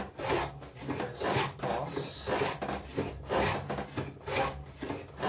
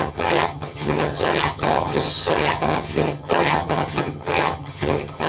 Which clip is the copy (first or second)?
second